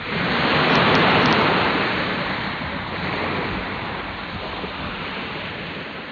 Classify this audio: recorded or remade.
remade